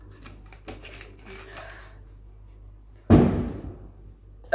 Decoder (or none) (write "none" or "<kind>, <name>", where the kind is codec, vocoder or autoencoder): none